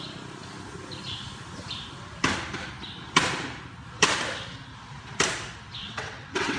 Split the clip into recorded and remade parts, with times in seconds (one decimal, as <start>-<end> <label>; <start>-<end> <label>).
0.0-5.8 recorded; 5.8-6.6 remade